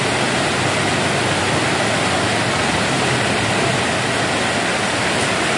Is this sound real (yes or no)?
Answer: yes